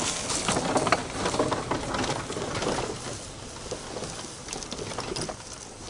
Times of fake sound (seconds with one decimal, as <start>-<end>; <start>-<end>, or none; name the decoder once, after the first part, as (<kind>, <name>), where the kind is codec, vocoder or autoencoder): none